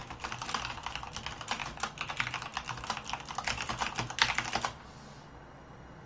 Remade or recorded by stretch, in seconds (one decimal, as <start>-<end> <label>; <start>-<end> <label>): 0.0-1.6 recorded; 1.6-2.1 remade; 2.1-6.1 recorded

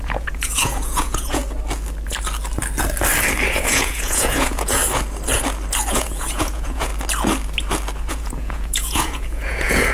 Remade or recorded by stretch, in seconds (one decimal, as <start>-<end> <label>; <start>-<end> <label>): 0.0-1.4 remade; 1.4-3.5 recorded; 3.5-4.8 remade; 4.8-5.9 recorded; 5.9-6.9 remade; 6.9-8.1 recorded; 8.1-9.9 remade

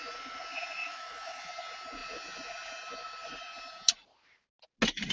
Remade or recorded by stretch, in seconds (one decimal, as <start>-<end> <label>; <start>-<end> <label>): 0.0-0.8 recorded; 0.8-1.5 remade; 1.5-5.1 recorded

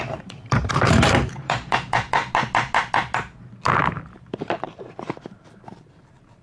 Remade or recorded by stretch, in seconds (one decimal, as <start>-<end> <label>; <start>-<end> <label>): 0.0-2.2 remade; 2.2-4.1 recorded; 4.1-6.4 remade

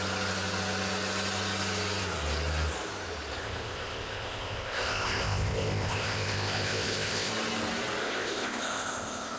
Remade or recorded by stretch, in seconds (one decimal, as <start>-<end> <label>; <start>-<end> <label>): 0.0-3.4 recorded; 3.4-7.3 remade; 7.3-8.0 recorded; 8.0-9.4 remade

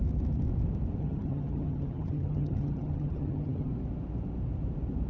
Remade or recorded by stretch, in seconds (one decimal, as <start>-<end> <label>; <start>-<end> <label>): 0.0-1.0 recorded; 1.0-3.7 remade; 3.7-5.1 recorded

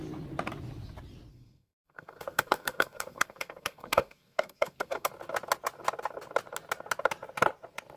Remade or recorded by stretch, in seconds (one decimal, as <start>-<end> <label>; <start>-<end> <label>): 0.0-1.3 recorded; 1.3-5.1 remade; 5.1-8.0 recorded

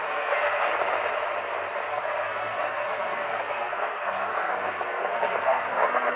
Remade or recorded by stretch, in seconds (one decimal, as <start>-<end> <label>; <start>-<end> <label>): 0.0-0.7 remade; 0.7-1.9 recorded; 1.9-6.2 remade